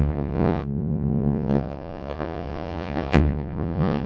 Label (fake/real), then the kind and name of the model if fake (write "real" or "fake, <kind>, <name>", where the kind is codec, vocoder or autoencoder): fake, vocoder, Vocos